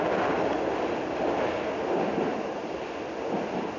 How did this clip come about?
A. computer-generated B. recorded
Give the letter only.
B